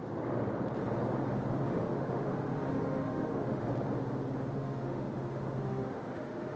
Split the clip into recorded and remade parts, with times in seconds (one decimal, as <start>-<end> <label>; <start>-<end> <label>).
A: 0.0-1.5 recorded; 1.5-3.7 remade; 3.7-4.5 recorded; 4.5-6.6 remade